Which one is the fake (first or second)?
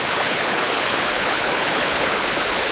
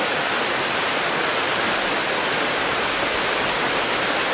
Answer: first